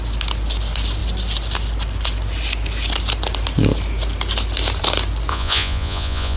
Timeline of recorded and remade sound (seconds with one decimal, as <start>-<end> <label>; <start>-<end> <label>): 0.0-5.3 recorded; 5.3-6.4 remade